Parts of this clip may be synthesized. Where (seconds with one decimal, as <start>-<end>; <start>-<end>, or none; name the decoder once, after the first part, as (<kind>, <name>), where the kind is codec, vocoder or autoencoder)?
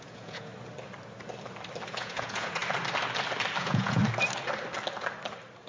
0.0-0.5 (vocoder, Vocos); 1.9-2.6; 3.6-4.0